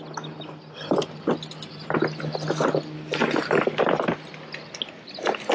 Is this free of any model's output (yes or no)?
yes